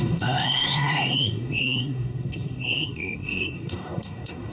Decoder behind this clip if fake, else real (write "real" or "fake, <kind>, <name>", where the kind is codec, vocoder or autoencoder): fake, codec, SNAC